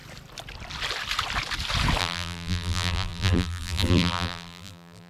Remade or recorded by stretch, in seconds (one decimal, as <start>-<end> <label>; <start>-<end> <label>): 0.0-2.0 recorded; 2.0-5.1 remade